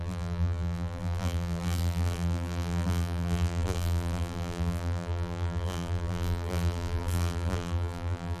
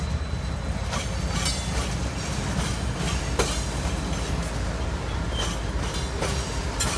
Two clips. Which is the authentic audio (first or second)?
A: second